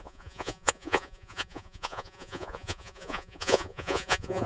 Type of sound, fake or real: fake